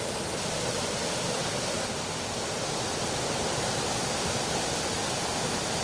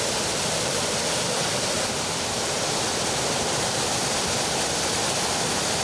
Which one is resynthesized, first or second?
second